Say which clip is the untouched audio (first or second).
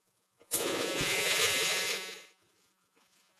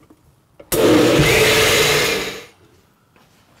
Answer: second